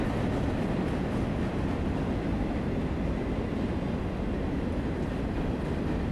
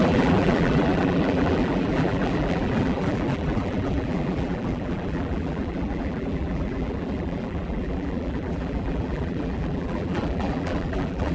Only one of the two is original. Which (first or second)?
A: first